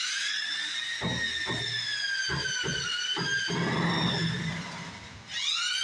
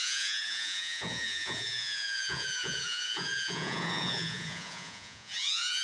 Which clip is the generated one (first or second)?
second